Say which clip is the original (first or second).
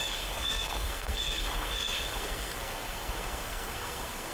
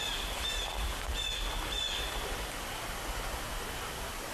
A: second